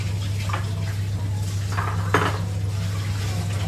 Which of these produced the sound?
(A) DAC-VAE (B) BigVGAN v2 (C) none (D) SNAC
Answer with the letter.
C